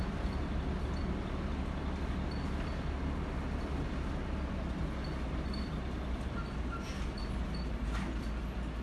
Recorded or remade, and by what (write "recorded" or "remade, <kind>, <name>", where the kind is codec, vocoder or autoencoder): recorded